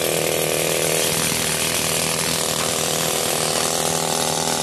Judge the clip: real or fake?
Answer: real